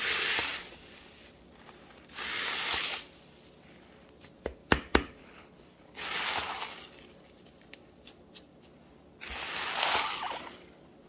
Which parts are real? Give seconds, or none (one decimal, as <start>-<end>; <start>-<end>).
0.0-5.2; 5.8-11.1

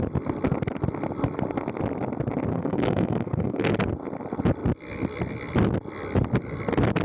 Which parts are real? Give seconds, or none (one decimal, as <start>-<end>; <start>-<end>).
0.0-2.5; 3.7-7.0

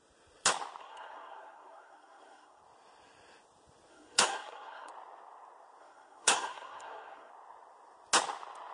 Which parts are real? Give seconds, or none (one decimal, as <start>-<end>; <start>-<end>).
0.0-0.8; 2.6-3.9; 4.9-5.8; 7.3-8.7

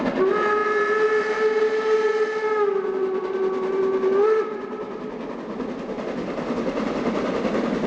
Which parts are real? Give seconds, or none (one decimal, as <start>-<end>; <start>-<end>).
0.0-7.9